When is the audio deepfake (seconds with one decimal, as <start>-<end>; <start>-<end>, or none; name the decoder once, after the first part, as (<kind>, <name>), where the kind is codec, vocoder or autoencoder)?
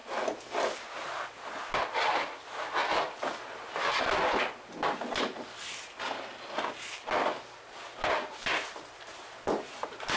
none